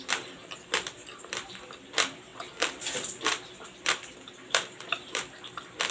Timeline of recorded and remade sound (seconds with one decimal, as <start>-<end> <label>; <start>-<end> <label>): 0.0-5.9 remade